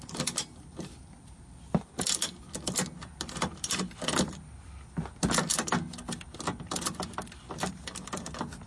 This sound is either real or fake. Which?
real